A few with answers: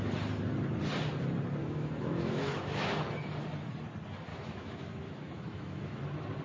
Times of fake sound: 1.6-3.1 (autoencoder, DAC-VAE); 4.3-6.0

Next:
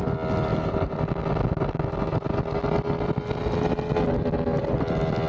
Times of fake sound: 0.5-1.0 (vocoder, BigVGAN v2)

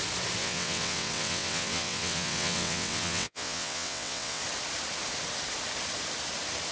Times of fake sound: 0.4-4.4 (vocoder, WaveNeXt)